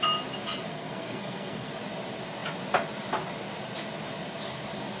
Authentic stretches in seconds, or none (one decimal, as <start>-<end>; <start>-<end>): 0.0-0.7; 1.7-5.0